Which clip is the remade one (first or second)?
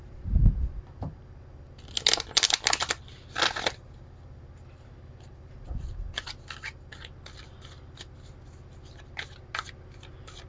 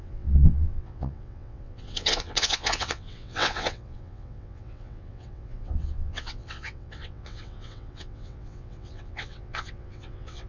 second